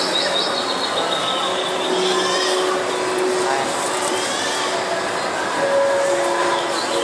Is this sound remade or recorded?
recorded